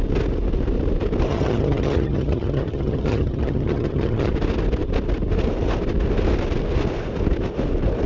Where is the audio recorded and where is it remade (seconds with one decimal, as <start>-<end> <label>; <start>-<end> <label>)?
0.0-1.3 recorded; 1.3-4.3 remade; 4.3-8.1 recorded